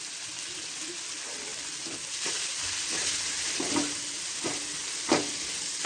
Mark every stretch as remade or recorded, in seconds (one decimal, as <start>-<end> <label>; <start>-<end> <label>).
0.0-5.9 recorded